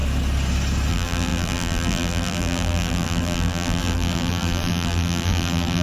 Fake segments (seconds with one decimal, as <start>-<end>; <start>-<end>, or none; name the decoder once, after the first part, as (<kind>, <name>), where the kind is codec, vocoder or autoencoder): 0.9-5.8 (vocoder, BigVGAN v2)